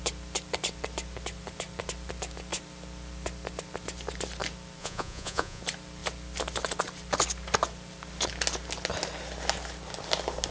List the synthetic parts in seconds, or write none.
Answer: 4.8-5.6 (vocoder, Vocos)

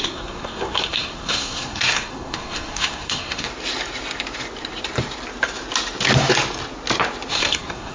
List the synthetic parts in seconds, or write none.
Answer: 0.0-3.5 (codec, SNAC); 7.3-7.9

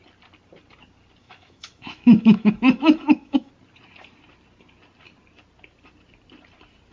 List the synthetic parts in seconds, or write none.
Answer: 1.2-3.5 (autoencoder, DAC-VAE)

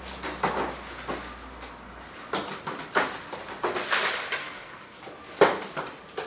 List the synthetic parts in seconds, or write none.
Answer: 4.4-5.0 (codec, SNAC)

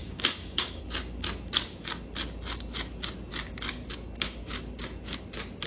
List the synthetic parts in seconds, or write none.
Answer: 0.0-0.8 (codec, DAC)

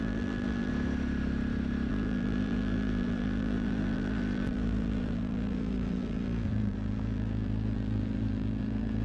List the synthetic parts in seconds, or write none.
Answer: 0.0-0.7 (vocoder, BigVGAN v2); 1.9-9.0

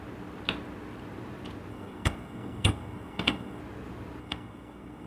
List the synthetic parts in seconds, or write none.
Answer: 1.7-3.6 (codec, SNAC); 4.2-5.1

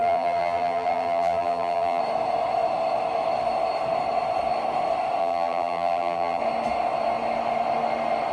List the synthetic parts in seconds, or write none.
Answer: 0.0-2.0 (vocoder, BigVGAN v2); 5.2-6.4